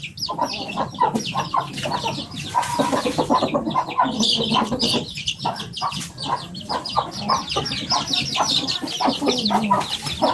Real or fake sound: real